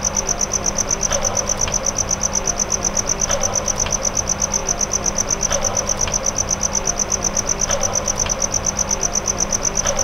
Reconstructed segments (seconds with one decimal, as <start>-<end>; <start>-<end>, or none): none